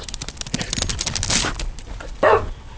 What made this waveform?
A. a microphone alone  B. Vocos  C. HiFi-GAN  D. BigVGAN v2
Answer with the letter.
A